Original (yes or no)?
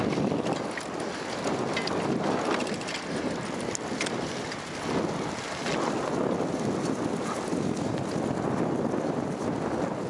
yes